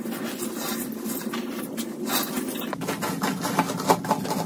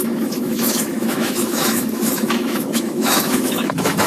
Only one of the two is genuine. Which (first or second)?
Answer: first